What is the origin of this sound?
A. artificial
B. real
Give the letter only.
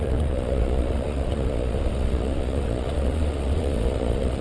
A